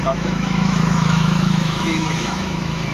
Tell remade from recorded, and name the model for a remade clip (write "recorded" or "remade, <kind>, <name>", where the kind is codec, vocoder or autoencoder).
remade, autoencoder, DAC-VAE